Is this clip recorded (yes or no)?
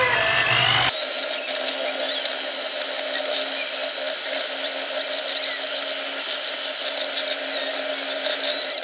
yes